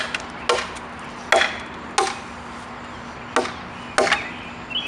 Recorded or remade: recorded